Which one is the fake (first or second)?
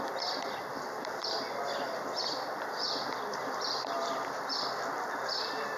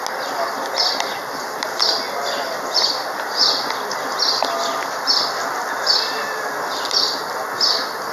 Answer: first